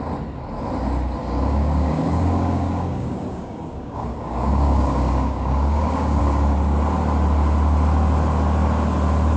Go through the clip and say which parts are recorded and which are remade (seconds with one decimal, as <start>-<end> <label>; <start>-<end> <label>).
0.0-1.2 recorded; 1.2-6.2 remade; 6.2-9.4 recorded